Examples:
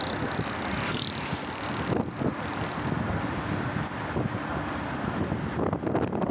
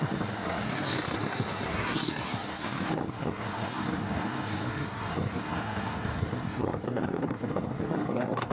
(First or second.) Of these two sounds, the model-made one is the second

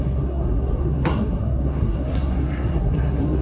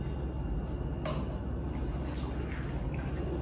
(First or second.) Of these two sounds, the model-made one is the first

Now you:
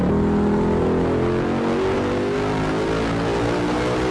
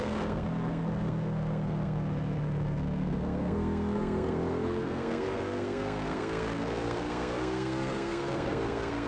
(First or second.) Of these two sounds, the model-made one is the second